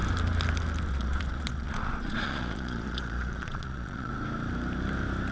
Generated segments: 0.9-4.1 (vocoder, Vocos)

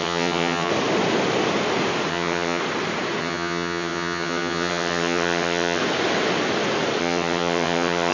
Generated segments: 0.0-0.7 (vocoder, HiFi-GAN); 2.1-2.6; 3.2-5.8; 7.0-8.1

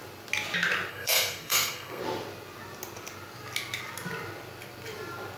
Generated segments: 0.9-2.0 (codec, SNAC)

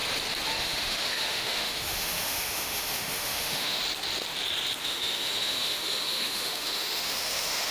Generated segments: 0.6-3.8 (autoencoder, DAC-VAE); 4.8-7.7

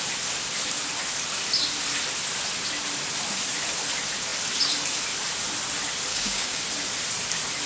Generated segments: 6.1-6.6 (codec, DAC)

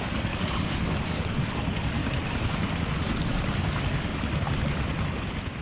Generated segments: 0.0-2.0 (codec, DAC)